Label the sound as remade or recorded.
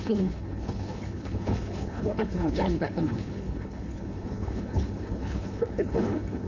remade